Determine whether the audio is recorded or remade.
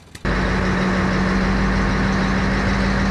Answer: recorded